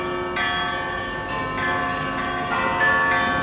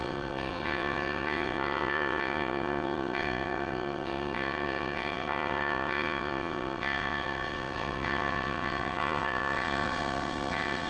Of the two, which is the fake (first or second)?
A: second